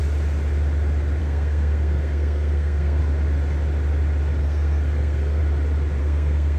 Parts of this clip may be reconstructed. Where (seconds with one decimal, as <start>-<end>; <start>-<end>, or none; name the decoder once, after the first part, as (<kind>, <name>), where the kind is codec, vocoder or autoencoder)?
1.2-3.0 (codec, SNAC); 4.4-5.4; 6.0-6.6